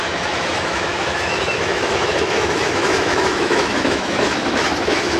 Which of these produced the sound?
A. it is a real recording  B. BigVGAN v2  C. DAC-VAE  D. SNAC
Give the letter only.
C